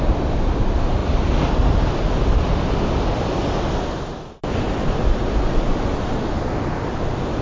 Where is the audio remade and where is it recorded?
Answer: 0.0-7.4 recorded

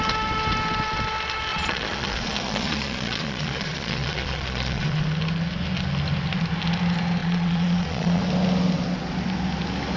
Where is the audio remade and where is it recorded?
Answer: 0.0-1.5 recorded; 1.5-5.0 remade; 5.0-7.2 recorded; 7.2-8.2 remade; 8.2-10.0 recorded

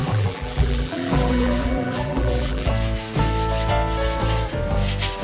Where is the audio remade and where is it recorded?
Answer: 0.0-2.7 remade; 2.7-5.2 recorded